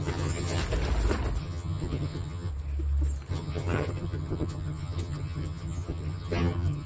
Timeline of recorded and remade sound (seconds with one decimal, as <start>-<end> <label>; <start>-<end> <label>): 0.0-0.6 remade; 0.6-1.4 recorded; 1.4-2.5 remade; 2.5-3.3 recorded; 3.3-6.9 remade